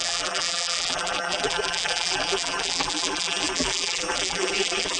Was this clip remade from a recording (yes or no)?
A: yes